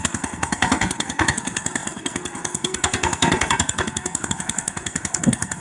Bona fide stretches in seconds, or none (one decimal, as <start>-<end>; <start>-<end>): none